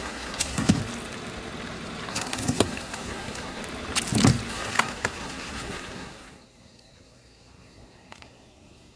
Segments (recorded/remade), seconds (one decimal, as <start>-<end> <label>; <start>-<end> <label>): 0.0-0.8 remade; 0.8-2.1 recorded; 2.1-3.6 remade; 3.6-4.5 recorded; 4.5-9.0 remade